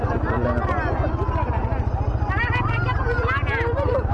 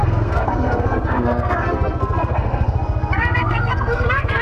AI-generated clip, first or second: second